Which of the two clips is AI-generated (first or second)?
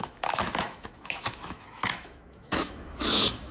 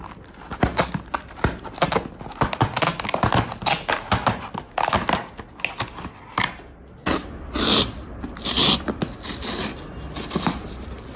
first